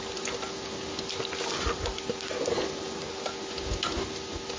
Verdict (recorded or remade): recorded